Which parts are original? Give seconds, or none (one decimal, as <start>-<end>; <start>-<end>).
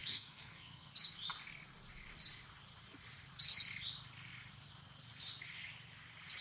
0.9-6.4